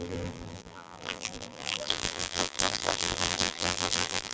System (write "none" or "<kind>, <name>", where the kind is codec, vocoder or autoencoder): vocoder, BigVGAN v2